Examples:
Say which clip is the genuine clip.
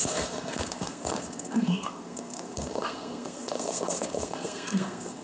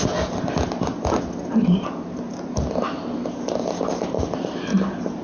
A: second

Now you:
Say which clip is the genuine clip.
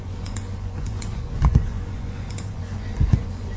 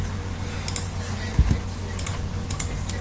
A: second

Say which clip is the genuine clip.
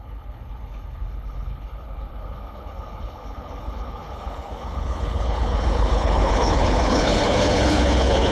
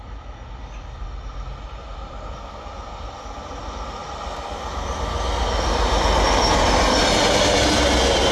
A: second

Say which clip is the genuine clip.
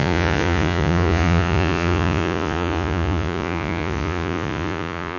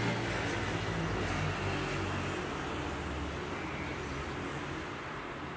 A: second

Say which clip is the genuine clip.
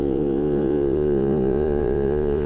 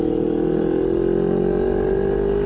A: second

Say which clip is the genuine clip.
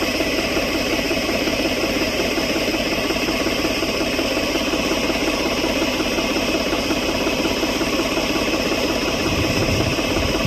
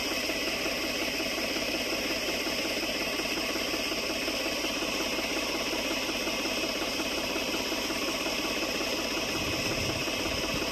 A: second